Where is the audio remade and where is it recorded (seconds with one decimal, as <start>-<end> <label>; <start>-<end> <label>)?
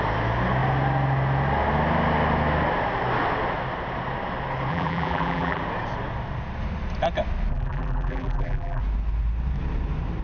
0.0-4.7 recorded; 4.7-5.6 remade; 5.6-7.5 recorded; 7.5-8.8 remade; 8.8-10.2 recorded